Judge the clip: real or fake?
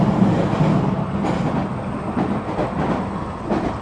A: real